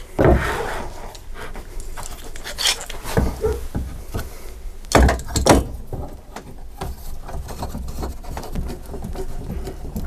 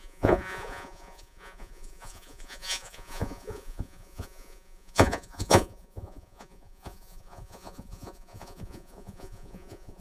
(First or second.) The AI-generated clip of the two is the second